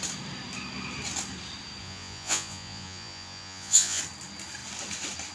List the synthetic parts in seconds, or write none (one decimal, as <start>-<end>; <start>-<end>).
1.8-4.0